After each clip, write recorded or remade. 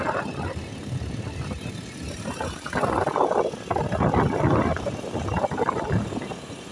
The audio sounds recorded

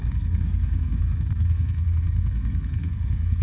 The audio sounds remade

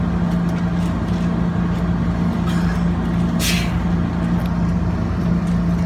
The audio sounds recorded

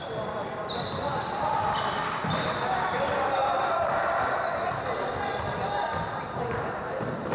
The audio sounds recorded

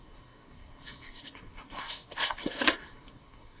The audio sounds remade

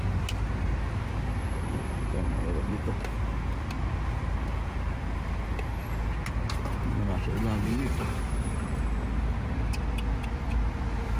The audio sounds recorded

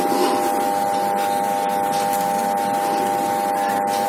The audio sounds recorded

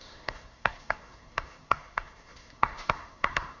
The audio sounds remade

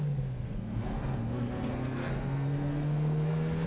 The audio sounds remade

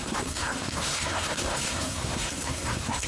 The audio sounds remade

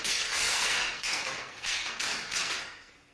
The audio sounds remade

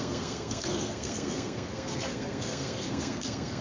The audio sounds remade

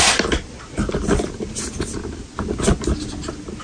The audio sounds recorded